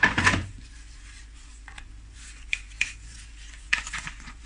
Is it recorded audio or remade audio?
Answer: remade